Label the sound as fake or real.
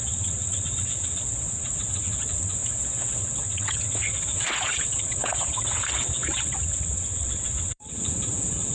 fake